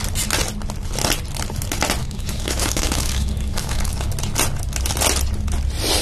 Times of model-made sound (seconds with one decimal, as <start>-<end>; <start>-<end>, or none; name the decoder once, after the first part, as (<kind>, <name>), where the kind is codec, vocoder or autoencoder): 2.0-4.1 (codec, DAC)